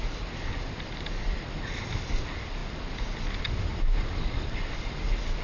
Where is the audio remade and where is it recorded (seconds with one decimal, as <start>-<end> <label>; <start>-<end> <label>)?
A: 0.0-5.4 recorded